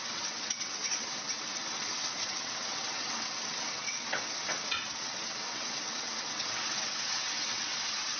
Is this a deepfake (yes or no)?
yes